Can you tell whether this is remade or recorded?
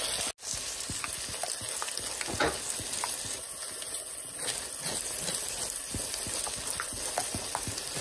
recorded